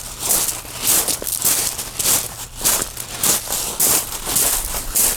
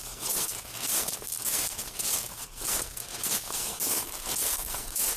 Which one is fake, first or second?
second